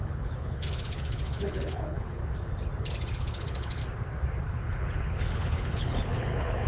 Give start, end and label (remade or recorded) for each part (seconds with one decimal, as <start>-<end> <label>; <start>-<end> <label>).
0.0-2.2 remade; 2.2-2.8 recorded; 2.8-3.8 remade; 3.8-4.4 recorded; 4.4-6.7 remade